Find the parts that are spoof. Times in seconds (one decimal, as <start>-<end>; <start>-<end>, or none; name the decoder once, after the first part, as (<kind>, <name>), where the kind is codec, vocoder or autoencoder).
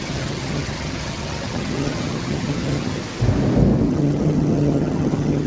0.0-3.0 (vocoder, HiFi-GAN); 3.9-5.5